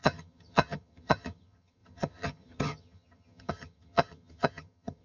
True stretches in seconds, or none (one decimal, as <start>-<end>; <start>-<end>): none